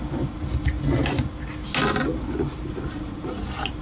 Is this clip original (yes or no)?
yes